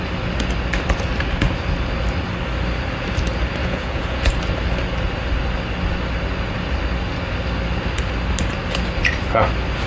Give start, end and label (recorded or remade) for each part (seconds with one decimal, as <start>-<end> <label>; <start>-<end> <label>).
0.0-3.6 recorded; 3.6-4.3 remade; 4.3-9.9 recorded